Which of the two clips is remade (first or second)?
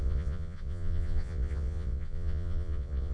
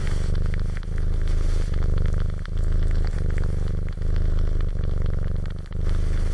first